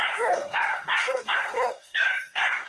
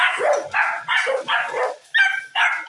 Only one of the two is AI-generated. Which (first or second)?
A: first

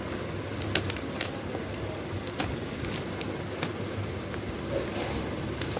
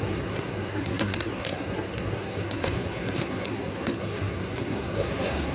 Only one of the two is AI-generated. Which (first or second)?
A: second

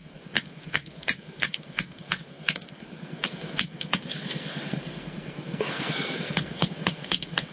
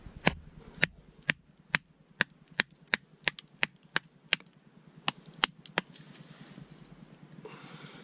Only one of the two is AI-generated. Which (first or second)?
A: first